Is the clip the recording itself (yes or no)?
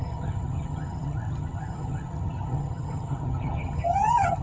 no